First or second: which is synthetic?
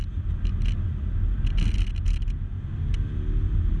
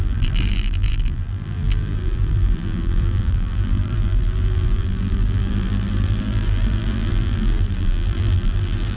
second